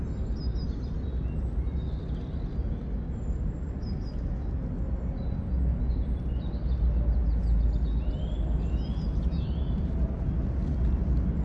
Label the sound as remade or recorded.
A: recorded